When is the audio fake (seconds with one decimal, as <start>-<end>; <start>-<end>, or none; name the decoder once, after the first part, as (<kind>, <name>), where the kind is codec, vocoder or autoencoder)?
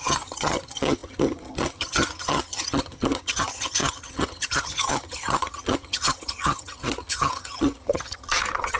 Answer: 0.0-8.8 (vocoder, HiFi-GAN)